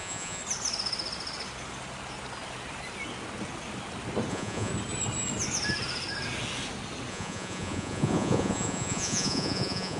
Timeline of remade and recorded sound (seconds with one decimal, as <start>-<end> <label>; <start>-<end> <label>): 0.0-0.4 remade; 0.4-4.3 recorded; 4.3-4.7 remade; 4.7-7.1 recorded; 7.1-10.0 remade

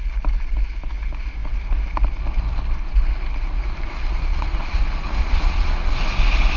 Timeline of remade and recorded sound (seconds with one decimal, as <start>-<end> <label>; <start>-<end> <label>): 0.0-4.2 recorded; 4.2-4.8 remade; 4.8-5.2 recorded; 5.2-5.9 remade; 5.9-6.6 recorded

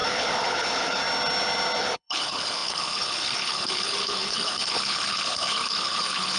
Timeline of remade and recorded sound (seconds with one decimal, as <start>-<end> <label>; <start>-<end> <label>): 0.0-1.0 remade; 1.0-1.8 recorded; 1.8-6.4 remade

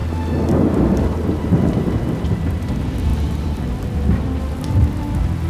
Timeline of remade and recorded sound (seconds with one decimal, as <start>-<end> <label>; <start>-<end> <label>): 0.0-0.5 recorded; 0.5-5.5 remade

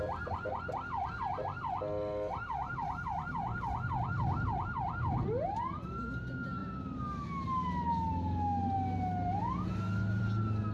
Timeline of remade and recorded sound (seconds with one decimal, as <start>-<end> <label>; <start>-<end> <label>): 0.0-10.7 recorded